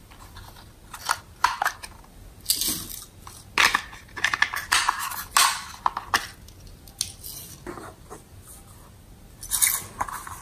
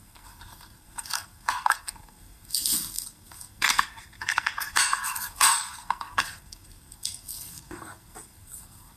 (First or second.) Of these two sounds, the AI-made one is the second